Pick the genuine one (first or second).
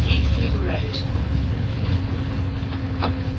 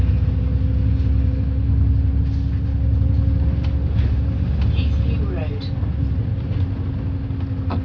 second